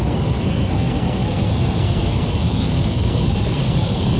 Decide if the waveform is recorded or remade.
remade